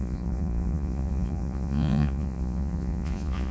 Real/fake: fake